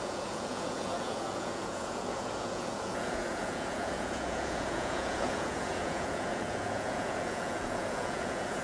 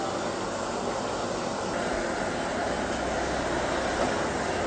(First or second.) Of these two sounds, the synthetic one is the first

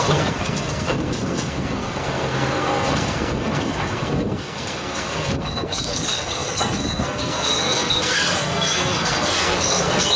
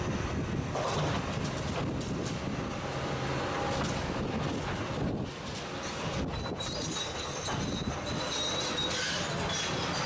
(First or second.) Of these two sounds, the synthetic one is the first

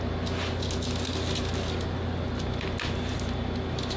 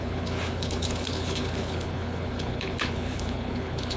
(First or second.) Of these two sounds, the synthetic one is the second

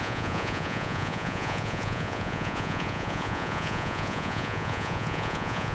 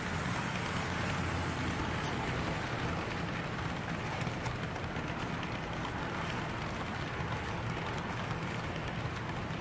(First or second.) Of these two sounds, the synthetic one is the first